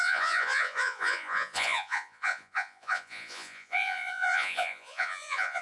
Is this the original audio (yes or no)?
no